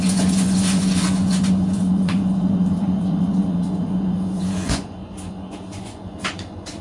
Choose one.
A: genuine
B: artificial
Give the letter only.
B